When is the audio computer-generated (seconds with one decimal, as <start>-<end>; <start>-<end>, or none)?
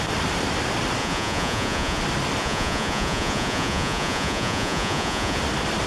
1.0-2.0; 2.4-5.4